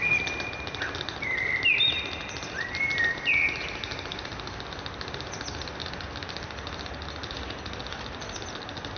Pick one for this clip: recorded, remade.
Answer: recorded